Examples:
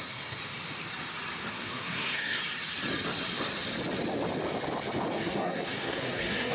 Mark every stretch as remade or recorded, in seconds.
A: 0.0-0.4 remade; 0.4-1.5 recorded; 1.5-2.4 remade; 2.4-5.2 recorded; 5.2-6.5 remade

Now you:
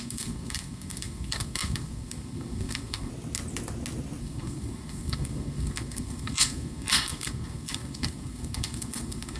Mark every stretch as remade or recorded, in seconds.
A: 0.0-3.1 remade; 3.1-4.2 recorded; 4.2-9.4 remade

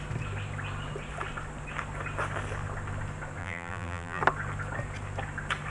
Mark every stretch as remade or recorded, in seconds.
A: 0.0-3.4 recorded; 3.4-4.2 remade; 4.2-5.7 recorded

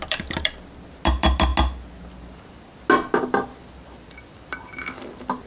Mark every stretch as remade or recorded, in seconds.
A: 0.0-1.5 remade; 1.5-2.2 recorded; 2.2-2.7 remade; 2.7-3.3 recorded; 3.3-5.5 remade